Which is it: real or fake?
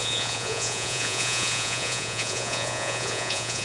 fake